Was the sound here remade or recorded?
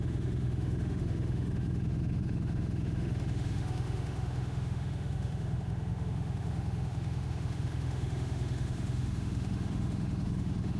remade